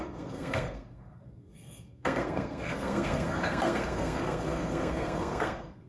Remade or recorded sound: remade